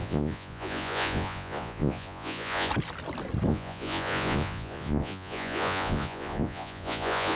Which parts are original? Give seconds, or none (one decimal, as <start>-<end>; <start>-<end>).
2.7-3.5